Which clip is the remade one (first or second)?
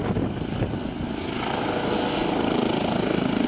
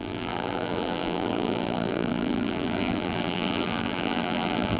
second